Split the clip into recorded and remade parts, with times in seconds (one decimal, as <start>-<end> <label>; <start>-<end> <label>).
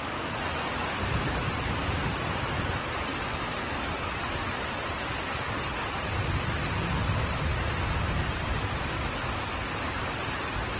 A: 0.0-10.8 recorded